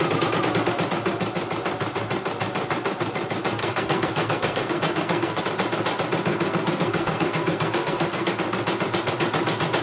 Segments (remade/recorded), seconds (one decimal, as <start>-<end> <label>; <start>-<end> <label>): 0.0-3.6 recorded; 3.6-5.4 remade; 5.4-6.3 recorded; 6.3-8.3 remade; 8.3-9.8 recorded